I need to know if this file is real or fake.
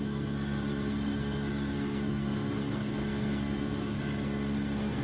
fake